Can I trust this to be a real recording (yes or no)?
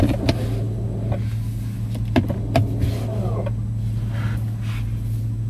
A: yes